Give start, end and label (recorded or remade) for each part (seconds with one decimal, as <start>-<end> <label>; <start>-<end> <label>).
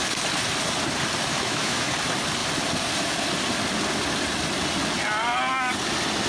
0.0-1.3 recorded; 1.3-1.9 remade; 1.9-6.3 recorded